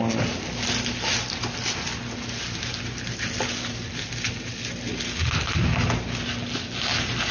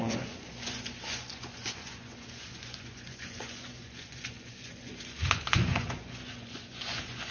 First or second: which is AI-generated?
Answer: second